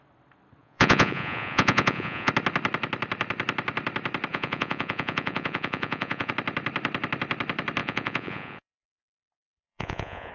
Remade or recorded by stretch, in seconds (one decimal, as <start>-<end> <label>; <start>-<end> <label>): 0.0-0.6 recorded; 0.6-2.3 remade; 2.3-4.3 recorded; 4.3-6.3 remade; 6.3-7.8 recorded; 7.8-10.3 remade